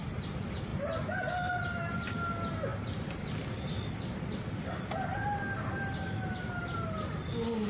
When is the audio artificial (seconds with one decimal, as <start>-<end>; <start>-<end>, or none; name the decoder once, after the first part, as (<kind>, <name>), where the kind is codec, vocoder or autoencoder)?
0.7-1.5 (vocoder, BigVGAN v2); 2.7-4.3